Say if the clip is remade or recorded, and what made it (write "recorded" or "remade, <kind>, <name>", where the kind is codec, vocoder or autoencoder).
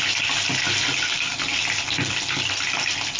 recorded